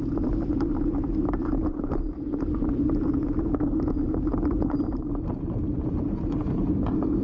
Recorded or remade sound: remade